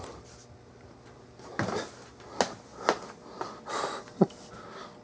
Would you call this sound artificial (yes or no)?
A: no